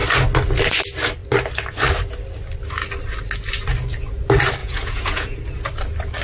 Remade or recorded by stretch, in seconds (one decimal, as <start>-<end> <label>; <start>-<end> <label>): 0.0-4.6 recorded; 4.6-5.4 remade; 5.4-6.2 recorded